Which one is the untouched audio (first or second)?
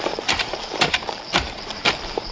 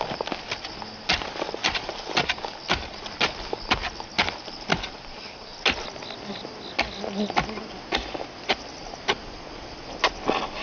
second